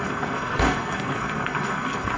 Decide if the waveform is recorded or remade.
remade